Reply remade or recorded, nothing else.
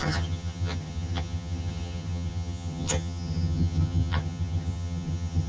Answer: remade